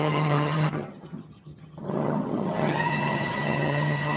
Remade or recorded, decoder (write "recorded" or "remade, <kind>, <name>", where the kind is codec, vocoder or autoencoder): remade, vocoder, HiFi-GAN